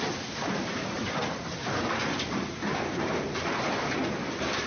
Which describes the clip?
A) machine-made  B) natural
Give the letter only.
A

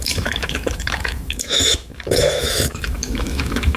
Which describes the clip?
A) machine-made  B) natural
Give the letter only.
A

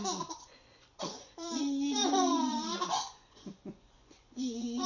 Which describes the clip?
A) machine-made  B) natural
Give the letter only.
A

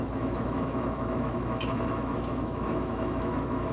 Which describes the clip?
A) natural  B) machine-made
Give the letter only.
B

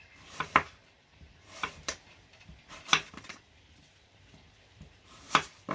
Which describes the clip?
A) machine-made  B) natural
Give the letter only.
A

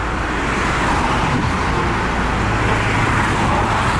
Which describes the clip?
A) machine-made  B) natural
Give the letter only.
B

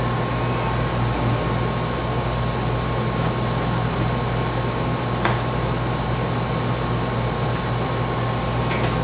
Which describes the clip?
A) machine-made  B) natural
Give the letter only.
B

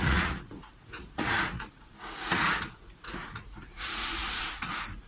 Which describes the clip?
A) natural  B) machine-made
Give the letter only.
B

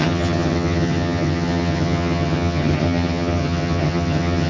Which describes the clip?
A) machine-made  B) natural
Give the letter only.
A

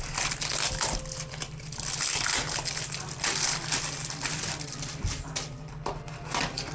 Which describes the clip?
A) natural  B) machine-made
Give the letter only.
A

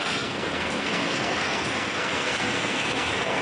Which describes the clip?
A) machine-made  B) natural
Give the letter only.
A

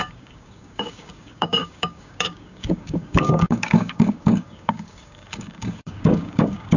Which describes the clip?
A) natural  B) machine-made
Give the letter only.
B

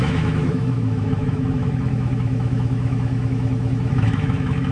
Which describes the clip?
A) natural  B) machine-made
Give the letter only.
B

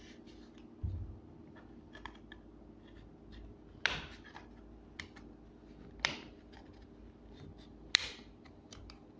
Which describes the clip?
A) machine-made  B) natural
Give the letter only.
A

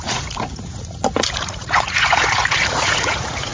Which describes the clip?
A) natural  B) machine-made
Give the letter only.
B